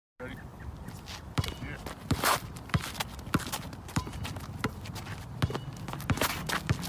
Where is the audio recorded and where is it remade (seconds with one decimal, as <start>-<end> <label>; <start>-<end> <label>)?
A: 0.0-6.9 recorded